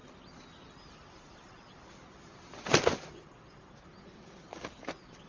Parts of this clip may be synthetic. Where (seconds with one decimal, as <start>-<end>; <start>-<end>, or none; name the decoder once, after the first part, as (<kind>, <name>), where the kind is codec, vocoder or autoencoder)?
none